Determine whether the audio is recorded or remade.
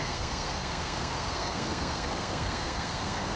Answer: remade